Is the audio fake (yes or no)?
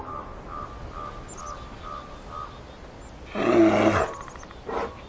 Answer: no